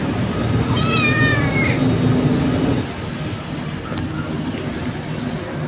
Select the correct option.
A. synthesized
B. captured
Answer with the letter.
B